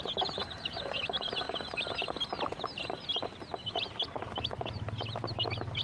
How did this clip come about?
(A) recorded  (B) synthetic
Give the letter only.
A